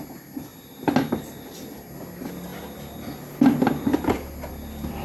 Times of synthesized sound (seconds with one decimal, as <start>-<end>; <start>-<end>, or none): none